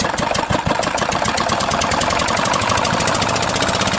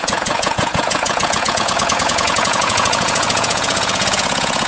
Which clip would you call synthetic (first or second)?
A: second